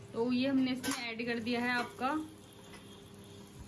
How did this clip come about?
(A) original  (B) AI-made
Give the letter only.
A